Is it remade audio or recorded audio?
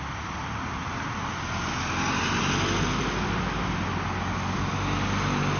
recorded